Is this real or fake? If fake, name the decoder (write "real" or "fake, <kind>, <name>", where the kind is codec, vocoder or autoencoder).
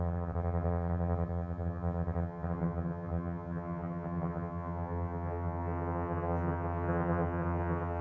fake, vocoder, HiFi-GAN